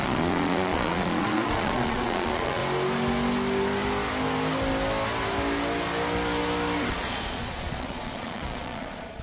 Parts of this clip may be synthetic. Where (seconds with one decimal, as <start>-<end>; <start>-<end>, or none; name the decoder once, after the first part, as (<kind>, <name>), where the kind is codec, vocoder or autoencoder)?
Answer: 0.0-2.6 (vocoder, Vocos); 6.9-9.2